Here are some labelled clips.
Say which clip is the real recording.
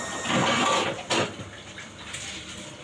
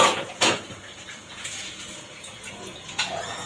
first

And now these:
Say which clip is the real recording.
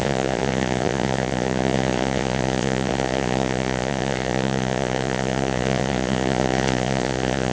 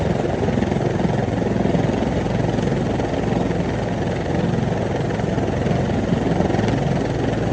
second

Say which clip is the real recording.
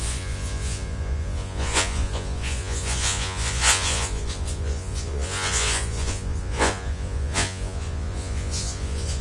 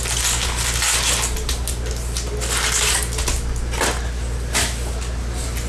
second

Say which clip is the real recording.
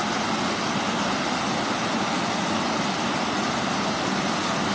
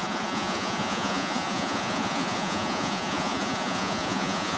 first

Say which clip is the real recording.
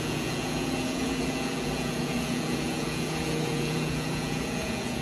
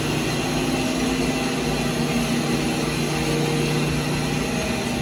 second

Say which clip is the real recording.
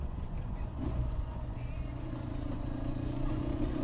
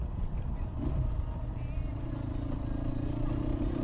second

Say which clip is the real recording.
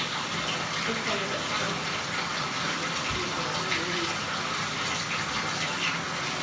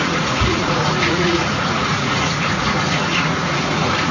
first